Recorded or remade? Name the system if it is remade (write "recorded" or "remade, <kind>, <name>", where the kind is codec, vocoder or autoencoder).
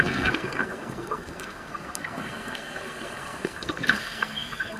remade, codec, SNAC